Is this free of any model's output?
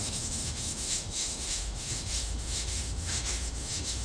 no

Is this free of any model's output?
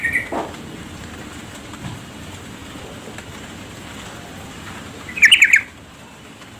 yes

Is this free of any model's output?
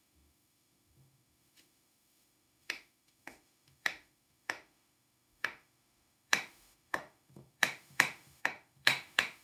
no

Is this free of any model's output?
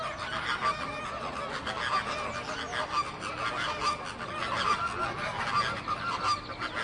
yes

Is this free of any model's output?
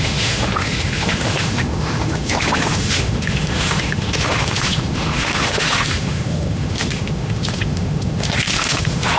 no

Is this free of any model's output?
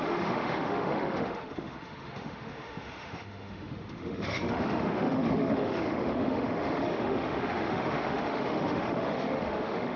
no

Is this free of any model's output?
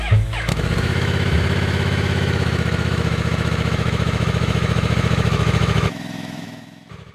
no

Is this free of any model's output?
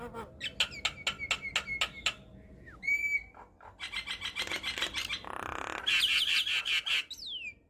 yes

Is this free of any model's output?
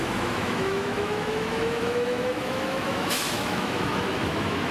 no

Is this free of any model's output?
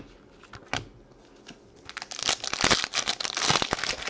yes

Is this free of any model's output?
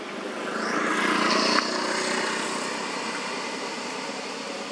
yes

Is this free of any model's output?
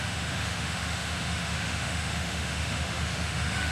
no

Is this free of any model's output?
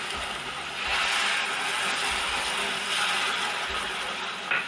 yes